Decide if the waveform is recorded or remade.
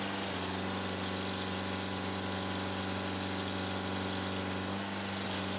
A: recorded